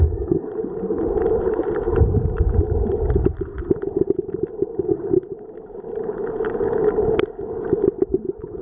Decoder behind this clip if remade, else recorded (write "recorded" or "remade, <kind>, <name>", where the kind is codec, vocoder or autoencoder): remade, vocoder, BigVGAN v2